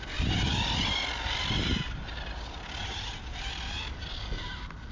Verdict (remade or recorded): recorded